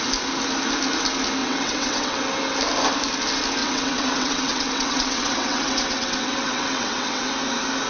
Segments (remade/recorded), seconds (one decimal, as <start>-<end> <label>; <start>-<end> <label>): 0.0-1.4 recorded; 1.4-2.2 remade; 2.2-3.6 recorded; 3.6-7.3 remade; 7.3-7.9 recorded